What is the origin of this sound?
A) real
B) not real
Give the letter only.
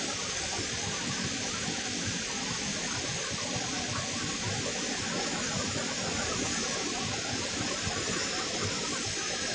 A